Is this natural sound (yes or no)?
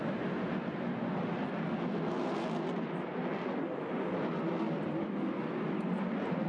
yes